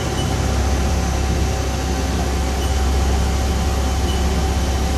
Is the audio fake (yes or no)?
no